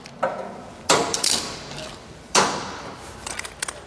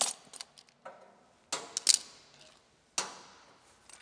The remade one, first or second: first